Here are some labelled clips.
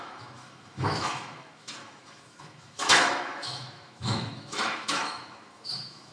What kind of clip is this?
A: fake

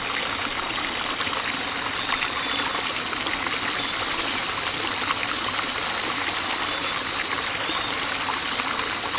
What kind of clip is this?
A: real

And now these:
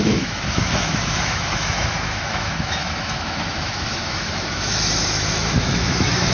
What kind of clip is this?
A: fake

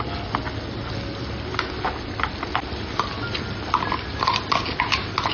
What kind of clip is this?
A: real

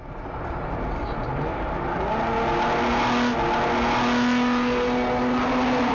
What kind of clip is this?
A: real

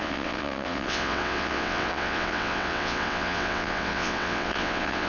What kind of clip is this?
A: fake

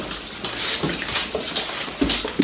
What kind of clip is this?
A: real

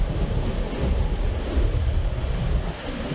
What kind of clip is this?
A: real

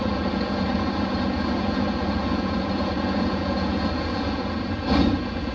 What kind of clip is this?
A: fake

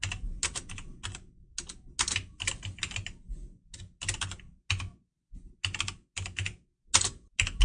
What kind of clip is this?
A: real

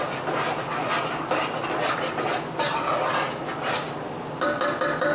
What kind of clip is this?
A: real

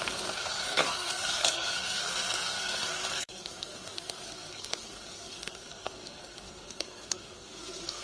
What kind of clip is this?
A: fake